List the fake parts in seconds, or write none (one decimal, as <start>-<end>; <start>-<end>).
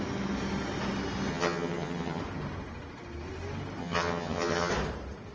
1.3-2.2; 3.8-4.7